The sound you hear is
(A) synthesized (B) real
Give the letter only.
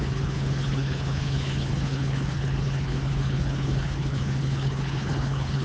A